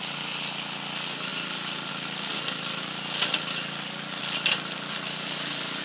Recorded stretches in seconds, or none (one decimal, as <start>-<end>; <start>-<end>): 0.0-2.3; 2.9-4.2